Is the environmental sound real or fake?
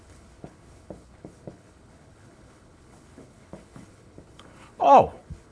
fake